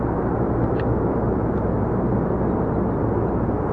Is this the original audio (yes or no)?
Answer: yes